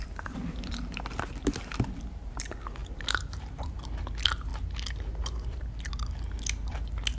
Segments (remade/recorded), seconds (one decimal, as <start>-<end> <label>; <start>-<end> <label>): 0.0-2.8 recorded; 2.8-4.0 remade; 4.0-4.5 recorded; 4.5-5.9 remade; 5.9-7.2 recorded